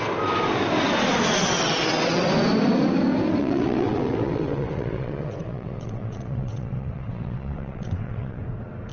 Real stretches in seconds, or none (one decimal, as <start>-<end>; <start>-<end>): 0.0-1.4; 2.3-3.4; 8.4-8.9